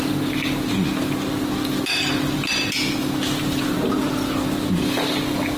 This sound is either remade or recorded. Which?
recorded